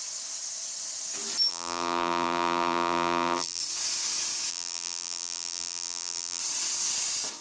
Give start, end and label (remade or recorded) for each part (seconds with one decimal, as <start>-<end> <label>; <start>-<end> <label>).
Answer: 0.0-1.5 recorded; 1.5-3.6 remade; 3.6-4.5 recorded; 4.5-6.4 remade; 6.4-7.4 recorded